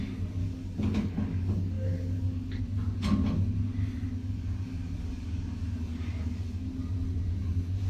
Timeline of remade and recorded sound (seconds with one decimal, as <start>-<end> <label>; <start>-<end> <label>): 0.0-0.4 recorded; 0.4-2.6 remade; 2.6-4.2 recorded; 4.2-6.6 remade; 6.6-7.9 recorded